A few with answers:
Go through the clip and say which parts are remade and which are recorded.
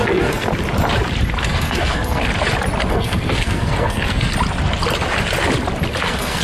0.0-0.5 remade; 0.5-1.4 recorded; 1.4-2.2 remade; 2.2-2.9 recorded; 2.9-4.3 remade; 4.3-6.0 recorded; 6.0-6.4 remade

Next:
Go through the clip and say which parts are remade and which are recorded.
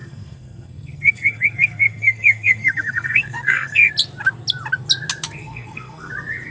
0.0-3.9 remade; 3.9-5.4 recorded; 5.4-6.1 remade; 6.1-6.5 recorded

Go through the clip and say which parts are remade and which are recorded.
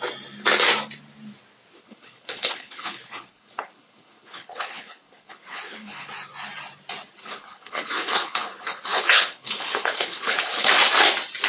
0.0-1.8 recorded; 1.8-6.1 remade; 6.1-7.2 recorded; 7.2-10.7 remade; 10.7-11.5 recorded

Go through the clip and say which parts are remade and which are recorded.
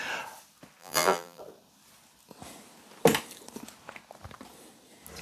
0.0-0.8 recorded; 0.8-1.4 remade; 1.4-5.2 recorded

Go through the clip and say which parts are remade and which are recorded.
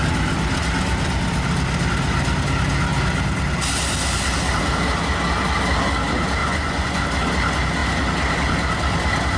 0.0-6.4 recorded; 6.4-7.0 remade; 7.0-9.4 recorded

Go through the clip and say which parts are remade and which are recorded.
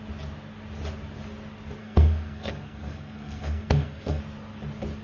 0.0-1.8 recorded; 1.8-4.2 remade; 4.2-5.0 recorded